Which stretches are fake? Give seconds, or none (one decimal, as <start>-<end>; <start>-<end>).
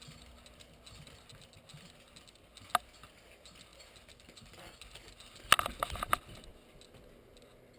none